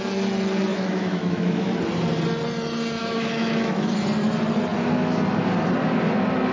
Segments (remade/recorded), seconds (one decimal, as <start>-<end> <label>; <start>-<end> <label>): 0.0-0.7 recorded; 0.7-1.7 remade; 1.7-3.0 recorded; 3.0-3.9 remade; 3.9-6.5 recorded